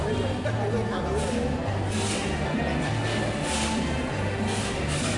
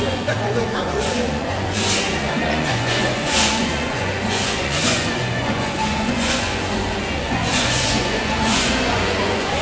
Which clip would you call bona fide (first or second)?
first